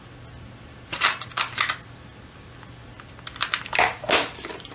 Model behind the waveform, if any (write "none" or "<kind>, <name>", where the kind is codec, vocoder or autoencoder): none